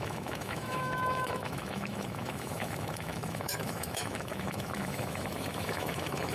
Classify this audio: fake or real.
fake